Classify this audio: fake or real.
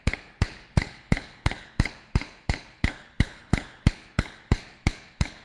fake